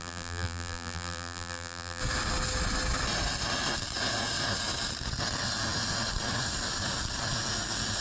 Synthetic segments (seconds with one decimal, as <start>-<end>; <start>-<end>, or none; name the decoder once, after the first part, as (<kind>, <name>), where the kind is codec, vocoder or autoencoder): 0.0-2.0 (vocoder, BigVGAN v2)